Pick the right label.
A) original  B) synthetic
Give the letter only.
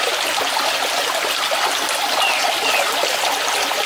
A